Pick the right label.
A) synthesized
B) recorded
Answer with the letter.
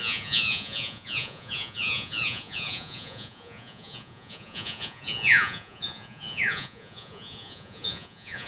A